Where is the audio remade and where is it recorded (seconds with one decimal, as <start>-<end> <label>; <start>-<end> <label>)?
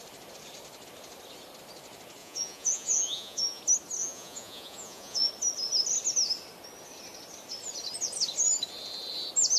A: 0.0-2.2 recorded; 2.2-3.6 remade; 3.6-4.0 recorded; 4.0-5.3 remade; 5.3-9.6 recorded